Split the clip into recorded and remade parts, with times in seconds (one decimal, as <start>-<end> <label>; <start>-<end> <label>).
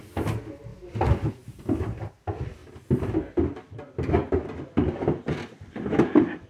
0.0-6.5 recorded